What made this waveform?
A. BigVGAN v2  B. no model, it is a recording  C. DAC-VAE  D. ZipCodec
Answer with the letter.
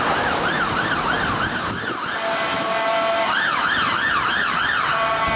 B